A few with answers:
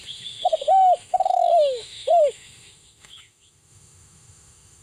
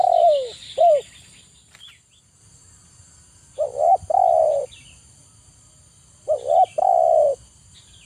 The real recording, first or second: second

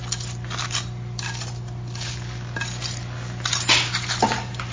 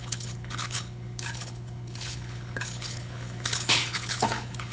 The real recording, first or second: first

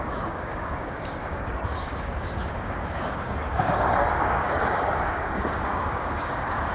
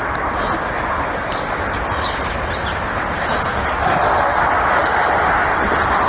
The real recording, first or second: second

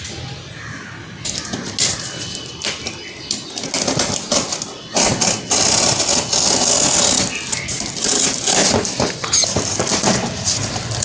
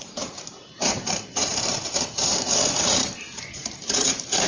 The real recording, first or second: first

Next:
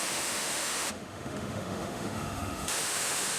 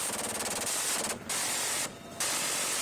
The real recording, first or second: second